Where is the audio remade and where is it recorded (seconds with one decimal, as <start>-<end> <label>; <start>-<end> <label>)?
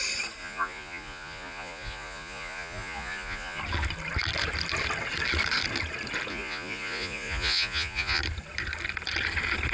0.0-0.4 recorded; 0.4-3.6 remade; 3.6-6.3 recorded; 6.3-8.2 remade; 8.2-9.7 recorded